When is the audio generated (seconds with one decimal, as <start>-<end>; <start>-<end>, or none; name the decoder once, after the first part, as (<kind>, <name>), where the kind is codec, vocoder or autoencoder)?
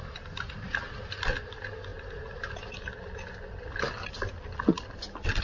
none